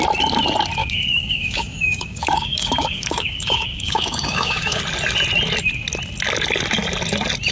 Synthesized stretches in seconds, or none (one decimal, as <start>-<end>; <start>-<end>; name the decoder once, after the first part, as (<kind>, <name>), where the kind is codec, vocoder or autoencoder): 0.8-4.8 (codec, DAC)